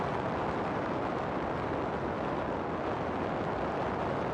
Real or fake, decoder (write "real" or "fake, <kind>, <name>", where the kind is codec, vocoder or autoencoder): real